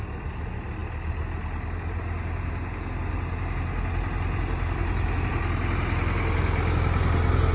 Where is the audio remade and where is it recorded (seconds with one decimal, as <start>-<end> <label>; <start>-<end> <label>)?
0.0-7.5 recorded